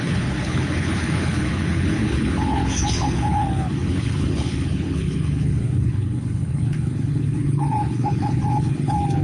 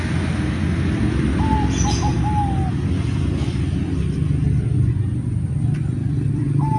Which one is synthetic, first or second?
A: first